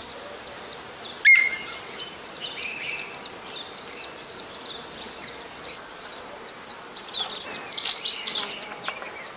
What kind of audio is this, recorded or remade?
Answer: recorded